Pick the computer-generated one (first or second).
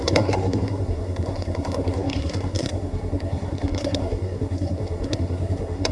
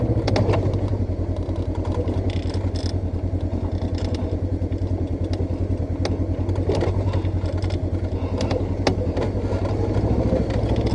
first